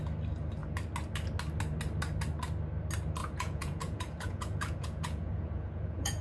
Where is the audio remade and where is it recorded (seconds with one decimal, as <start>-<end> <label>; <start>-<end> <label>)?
0.0-3.2 recorded; 3.2-6.2 remade